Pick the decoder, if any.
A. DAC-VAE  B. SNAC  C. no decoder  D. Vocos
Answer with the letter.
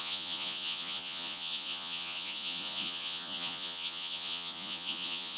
D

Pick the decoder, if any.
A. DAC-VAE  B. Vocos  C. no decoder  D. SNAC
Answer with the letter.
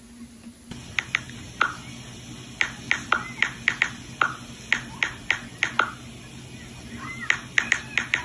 C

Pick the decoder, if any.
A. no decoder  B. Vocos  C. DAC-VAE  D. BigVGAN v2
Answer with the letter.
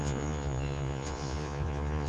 B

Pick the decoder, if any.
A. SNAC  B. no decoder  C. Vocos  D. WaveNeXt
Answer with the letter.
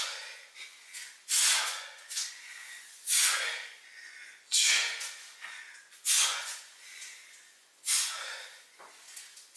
C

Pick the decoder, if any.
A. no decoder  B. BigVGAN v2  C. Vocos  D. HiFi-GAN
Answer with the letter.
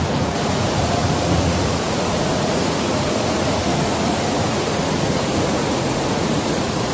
C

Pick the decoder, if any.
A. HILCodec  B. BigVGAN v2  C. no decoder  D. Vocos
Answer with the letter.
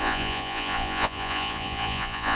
D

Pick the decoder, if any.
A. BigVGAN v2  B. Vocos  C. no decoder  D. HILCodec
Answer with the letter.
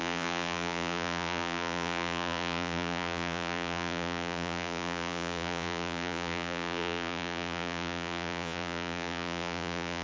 B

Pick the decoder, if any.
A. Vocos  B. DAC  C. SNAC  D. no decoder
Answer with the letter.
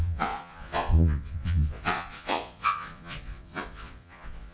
A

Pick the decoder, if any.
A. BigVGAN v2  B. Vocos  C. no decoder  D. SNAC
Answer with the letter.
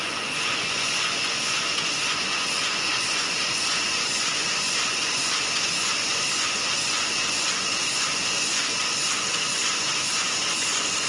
B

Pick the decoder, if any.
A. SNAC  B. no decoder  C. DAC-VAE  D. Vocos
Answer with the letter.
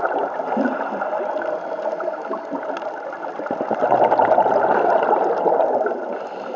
B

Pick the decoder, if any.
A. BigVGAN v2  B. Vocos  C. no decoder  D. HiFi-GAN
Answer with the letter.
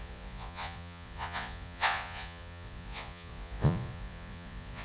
B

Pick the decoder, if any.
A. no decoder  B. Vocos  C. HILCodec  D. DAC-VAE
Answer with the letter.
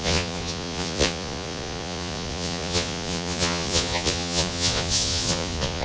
B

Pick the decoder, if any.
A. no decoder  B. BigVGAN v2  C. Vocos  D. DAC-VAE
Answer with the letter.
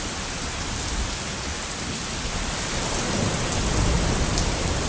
A